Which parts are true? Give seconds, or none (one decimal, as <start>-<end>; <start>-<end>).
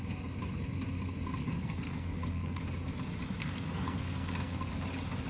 0.0-1.4; 2.6-3.4; 4.7-5.3